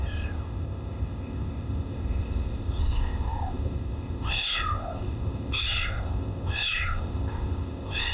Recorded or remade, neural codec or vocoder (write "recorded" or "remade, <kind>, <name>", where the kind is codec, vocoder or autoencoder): remade, codec, ZipCodec